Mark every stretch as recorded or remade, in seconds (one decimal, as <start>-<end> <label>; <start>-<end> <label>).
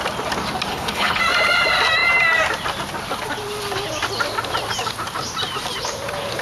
0.0-0.7 recorded; 0.7-1.2 remade; 1.2-6.4 recorded